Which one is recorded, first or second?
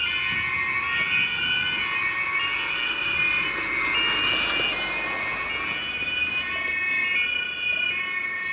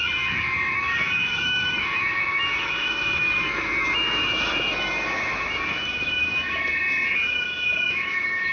first